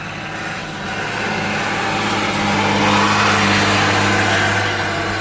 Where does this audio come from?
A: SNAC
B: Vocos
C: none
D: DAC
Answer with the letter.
C